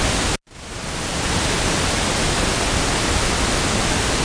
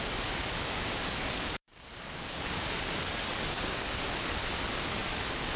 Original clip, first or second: first